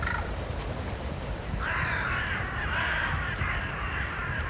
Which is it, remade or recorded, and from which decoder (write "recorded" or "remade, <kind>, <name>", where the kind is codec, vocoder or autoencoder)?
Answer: remade, vocoder, BigVGAN v2